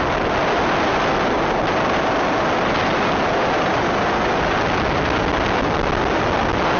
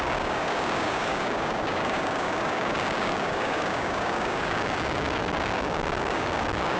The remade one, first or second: second